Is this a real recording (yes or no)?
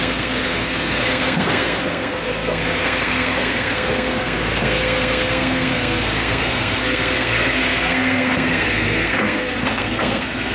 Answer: no